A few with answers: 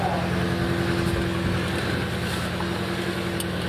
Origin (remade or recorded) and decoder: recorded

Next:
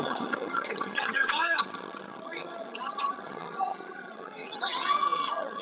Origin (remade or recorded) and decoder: remade, vocoder, HiFi-GAN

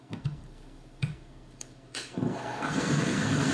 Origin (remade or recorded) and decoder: remade, codec, SNAC